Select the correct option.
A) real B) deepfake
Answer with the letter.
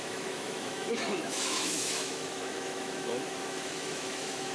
B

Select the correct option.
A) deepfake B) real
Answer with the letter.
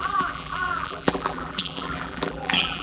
A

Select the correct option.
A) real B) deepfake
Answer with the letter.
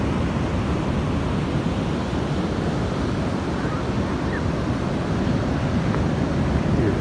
A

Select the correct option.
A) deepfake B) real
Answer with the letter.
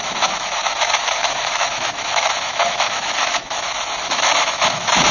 A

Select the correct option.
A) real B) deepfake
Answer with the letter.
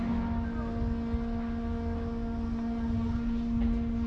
A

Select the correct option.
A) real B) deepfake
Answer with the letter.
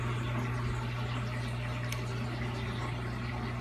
A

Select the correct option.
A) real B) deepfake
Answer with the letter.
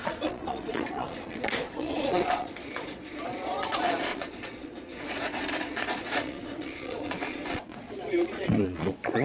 B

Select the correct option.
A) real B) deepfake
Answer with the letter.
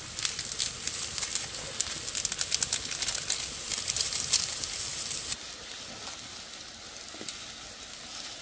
A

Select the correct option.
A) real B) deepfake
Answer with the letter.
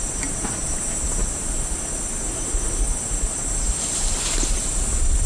A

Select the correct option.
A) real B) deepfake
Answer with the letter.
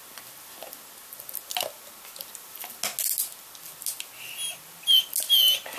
A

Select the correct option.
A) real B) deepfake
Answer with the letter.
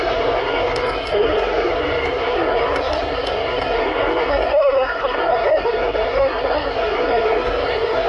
B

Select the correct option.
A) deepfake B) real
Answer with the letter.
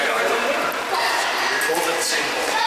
A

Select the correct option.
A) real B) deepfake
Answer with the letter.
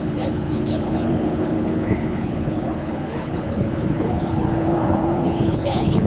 B